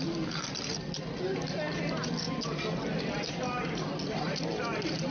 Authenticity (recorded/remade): recorded